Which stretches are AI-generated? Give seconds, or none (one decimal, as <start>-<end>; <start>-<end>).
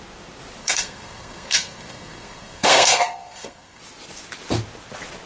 0.6-3.8